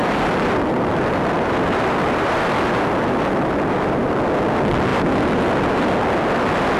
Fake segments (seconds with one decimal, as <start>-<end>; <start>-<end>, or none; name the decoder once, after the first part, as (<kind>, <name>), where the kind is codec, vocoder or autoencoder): 0.0-4.1 (vocoder, BigVGAN v2); 4.9-5.9